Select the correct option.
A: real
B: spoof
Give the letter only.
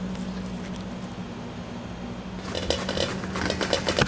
A